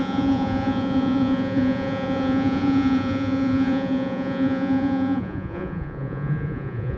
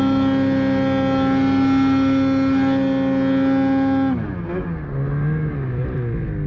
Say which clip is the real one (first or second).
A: second